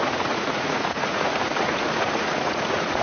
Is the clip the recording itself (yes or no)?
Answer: no